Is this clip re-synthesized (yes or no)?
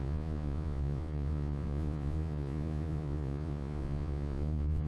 yes